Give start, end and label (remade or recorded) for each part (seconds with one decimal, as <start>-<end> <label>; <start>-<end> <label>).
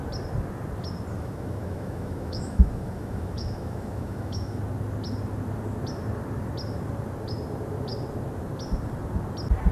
0.0-1.1 recorded; 1.1-4.6 remade; 4.6-9.7 recorded